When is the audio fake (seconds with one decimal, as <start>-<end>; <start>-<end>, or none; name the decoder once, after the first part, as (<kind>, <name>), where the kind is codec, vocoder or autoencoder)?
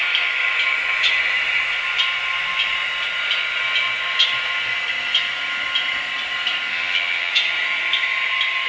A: 6.7-7.3 (vocoder, HiFi-GAN)